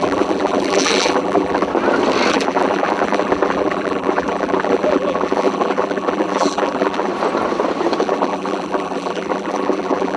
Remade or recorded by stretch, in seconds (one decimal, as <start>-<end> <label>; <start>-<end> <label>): 0.0-1.7 remade; 1.7-2.3 recorded; 2.3-7.1 remade; 7.1-8.0 recorded; 8.0-10.2 remade